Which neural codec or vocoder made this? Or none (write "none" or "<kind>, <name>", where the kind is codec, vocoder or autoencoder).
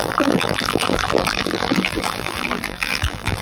vocoder, BigVGAN v2